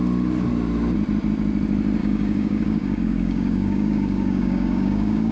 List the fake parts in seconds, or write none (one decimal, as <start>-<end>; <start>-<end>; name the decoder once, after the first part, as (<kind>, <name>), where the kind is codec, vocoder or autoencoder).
2.0-5.3 (codec, DAC)